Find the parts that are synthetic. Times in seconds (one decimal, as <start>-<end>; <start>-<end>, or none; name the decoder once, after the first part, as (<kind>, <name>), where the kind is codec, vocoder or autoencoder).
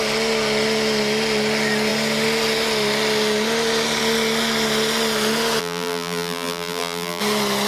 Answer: 5.6-7.2 (vocoder, BigVGAN v2)